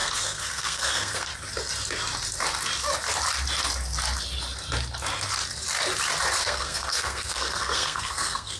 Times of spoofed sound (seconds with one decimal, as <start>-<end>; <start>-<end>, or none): 0.0-1.3; 6.4-8.6